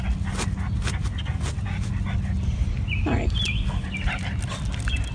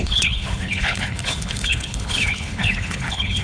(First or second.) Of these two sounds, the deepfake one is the second